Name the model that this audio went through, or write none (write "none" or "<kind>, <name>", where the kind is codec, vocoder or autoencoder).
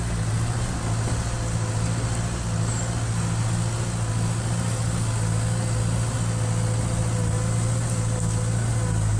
none